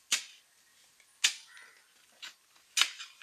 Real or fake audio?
real